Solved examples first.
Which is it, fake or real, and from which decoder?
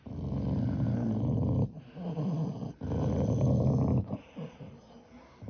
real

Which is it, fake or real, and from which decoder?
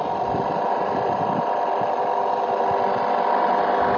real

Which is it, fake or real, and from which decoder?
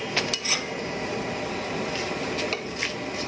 real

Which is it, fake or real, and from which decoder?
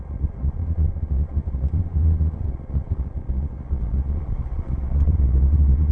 fake, vocoder, Vocos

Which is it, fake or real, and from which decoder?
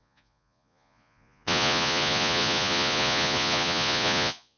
fake, vocoder, Vocos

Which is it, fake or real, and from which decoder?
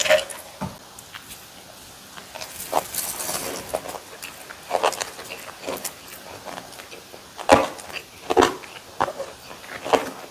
real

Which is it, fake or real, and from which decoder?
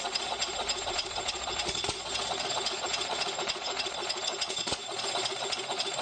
fake, vocoder, Vocos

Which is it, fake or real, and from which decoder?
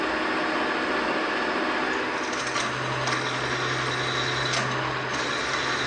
real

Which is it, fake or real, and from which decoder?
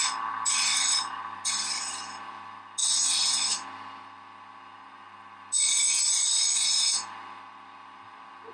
real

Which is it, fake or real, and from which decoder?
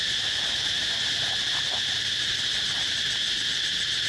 real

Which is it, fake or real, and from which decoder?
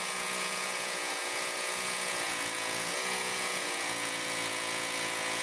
fake, vocoder, Vocos